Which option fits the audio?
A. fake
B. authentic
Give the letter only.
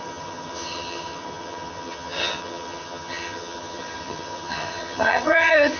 A